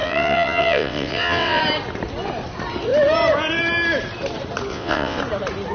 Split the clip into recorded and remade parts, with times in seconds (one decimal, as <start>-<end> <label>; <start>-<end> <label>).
0.0-1.6 remade; 1.6-4.7 recorded; 4.7-5.2 remade; 5.2-5.7 recorded